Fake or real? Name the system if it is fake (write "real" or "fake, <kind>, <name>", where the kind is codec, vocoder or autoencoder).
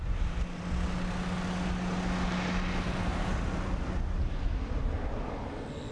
real